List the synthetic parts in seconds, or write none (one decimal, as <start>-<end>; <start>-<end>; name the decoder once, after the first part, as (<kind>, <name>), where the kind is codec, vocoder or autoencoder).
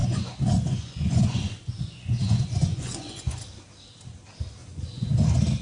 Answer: 0.0-3.4 (vocoder, Vocos); 4.6-5.1